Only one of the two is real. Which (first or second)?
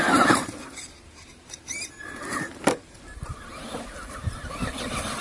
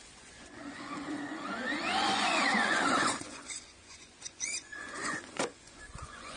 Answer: first